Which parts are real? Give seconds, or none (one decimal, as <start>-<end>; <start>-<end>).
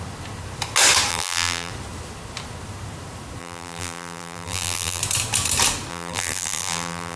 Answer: 0.0-1.1; 1.7-3.4; 5.0-5.9